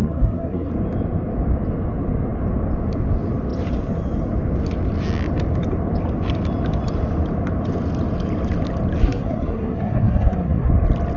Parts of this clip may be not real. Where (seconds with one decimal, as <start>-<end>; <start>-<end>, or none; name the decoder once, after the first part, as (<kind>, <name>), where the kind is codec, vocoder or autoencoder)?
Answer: 0.0-0.7 (codec, SNAC); 9.0-10.7